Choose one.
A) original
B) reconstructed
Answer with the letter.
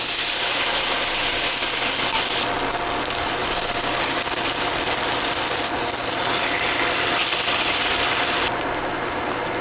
A